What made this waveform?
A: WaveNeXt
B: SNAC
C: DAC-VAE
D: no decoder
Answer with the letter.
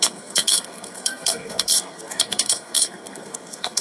B